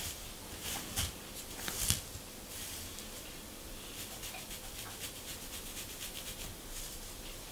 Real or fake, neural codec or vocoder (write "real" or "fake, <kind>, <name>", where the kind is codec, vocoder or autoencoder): fake, vocoder, BigVGAN v2